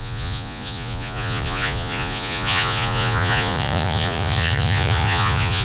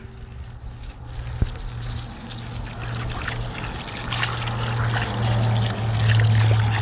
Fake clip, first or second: first